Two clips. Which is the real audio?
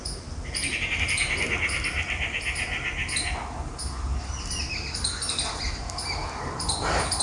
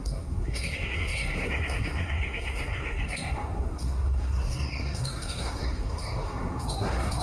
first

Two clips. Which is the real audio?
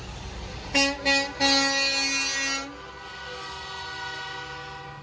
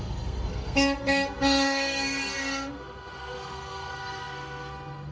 first